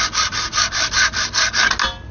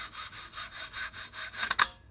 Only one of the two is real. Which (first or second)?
first